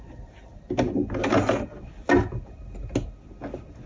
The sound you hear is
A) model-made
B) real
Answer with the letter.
B